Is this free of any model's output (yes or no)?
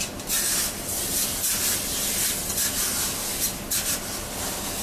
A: yes